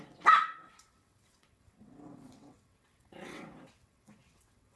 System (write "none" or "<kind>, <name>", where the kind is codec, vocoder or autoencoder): vocoder, WaveNeXt